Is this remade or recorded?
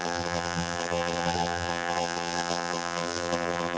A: remade